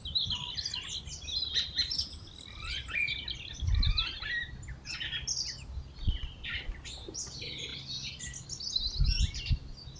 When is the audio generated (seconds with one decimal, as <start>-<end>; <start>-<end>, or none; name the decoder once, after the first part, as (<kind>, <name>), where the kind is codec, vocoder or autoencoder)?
none